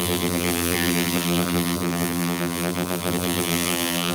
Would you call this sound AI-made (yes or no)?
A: yes